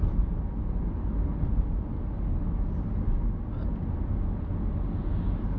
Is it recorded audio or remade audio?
recorded